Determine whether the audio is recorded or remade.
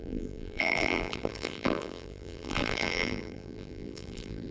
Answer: remade